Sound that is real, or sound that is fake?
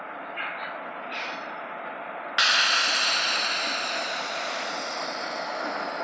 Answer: real